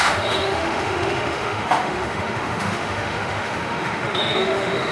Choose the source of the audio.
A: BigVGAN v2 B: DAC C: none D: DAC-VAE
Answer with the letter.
D